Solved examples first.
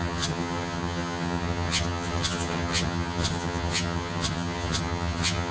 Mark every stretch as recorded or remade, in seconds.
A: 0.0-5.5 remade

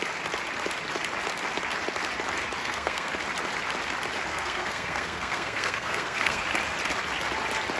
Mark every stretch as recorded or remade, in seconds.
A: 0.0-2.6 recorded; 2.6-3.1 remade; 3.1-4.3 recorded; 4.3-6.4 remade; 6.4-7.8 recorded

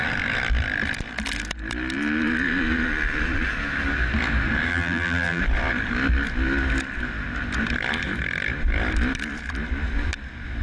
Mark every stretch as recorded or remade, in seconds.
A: 0.0-4.7 recorded; 4.7-5.4 remade; 5.4-10.6 recorded

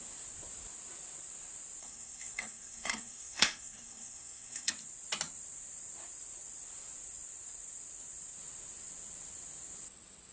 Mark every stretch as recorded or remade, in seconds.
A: 0.0-1.8 recorded; 1.8-4.7 remade; 4.7-10.3 recorded

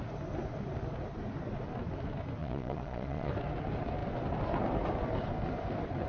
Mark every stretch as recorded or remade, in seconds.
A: 0.0-2.4 recorded; 2.4-3.3 remade; 3.3-6.1 recorded